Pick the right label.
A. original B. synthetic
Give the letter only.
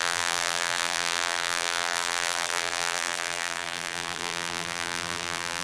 B